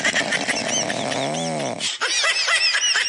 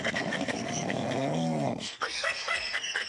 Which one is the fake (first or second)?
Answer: second